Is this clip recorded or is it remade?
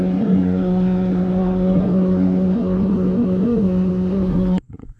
remade